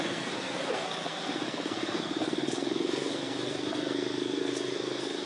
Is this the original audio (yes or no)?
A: no